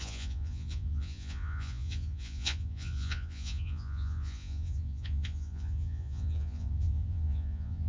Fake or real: fake